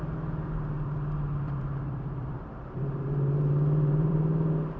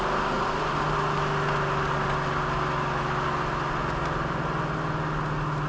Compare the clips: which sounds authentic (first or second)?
second